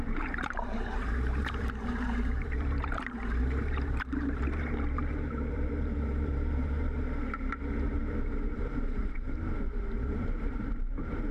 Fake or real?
fake